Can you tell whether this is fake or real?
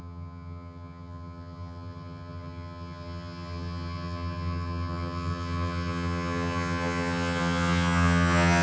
fake